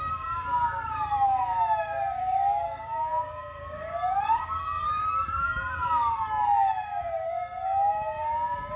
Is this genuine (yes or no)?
no